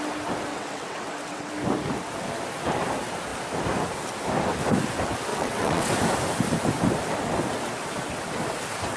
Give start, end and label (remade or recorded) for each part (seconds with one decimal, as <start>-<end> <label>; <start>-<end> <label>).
0.0-0.5 recorded; 0.5-1.5 remade; 1.5-5.3 recorded; 5.3-5.9 remade; 5.9-9.0 recorded